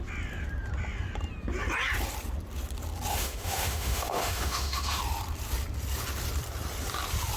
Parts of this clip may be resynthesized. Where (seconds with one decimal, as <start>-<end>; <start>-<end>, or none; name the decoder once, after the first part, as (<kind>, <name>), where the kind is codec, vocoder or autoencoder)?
3.1-5.0 (autoencoder, DAC-VAE)